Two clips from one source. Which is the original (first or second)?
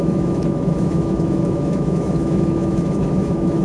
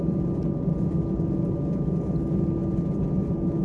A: second